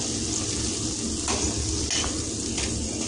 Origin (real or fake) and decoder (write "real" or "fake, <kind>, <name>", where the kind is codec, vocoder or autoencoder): real